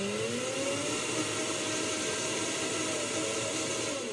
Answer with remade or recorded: recorded